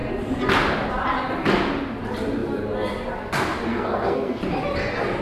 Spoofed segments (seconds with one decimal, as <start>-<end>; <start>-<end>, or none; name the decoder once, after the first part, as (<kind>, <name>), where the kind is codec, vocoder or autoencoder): 3.7-4.4 (codec, SNAC)